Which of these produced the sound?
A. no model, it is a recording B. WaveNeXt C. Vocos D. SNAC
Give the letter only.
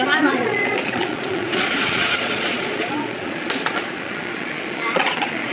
C